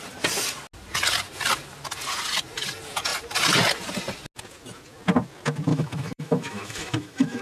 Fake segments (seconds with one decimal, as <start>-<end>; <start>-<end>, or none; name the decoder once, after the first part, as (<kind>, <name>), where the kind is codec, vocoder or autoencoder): 5.7-7.4 (autoencoder, DAC-VAE)

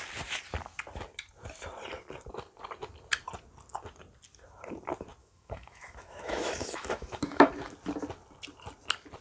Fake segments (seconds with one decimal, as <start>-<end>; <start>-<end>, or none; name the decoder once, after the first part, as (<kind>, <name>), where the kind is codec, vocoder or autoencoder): 5.2-7.5 (autoencoder, DAC-VAE)

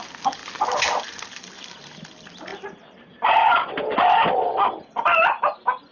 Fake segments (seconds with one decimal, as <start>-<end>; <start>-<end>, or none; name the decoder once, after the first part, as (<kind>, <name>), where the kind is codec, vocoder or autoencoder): none

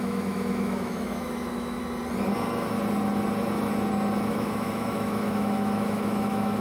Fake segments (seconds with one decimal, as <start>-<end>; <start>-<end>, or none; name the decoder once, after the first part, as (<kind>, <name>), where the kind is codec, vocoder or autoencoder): 0.0-1.8 (autoencoder, DAC-VAE); 4.3-6.6